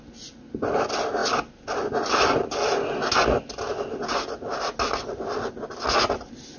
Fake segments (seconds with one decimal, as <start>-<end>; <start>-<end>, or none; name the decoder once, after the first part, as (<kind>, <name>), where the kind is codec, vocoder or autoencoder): none